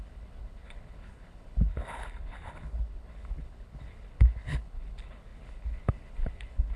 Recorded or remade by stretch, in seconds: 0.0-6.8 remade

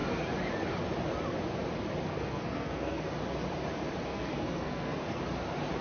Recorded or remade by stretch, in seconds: 0.0-2.1 recorded; 2.1-3.1 remade; 3.1-4.1 recorded; 4.1-5.2 remade; 5.2-5.8 recorded

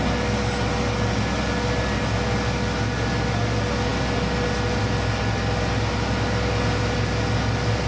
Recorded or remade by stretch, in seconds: 0.0-7.9 recorded